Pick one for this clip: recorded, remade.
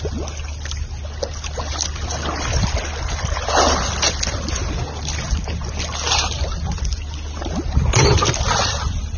recorded